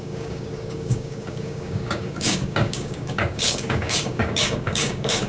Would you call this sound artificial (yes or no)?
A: yes